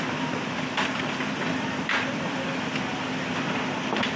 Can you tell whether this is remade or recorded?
recorded